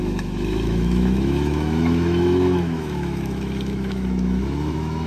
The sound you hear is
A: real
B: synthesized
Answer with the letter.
B